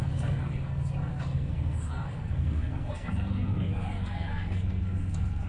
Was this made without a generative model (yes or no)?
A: no